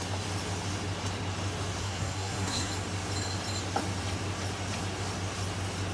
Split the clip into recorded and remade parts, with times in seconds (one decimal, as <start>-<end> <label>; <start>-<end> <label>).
0.0-1.8 recorded; 1.8-2.7 remade; 2.7-5.9 recorded